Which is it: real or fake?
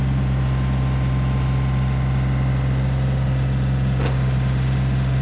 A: real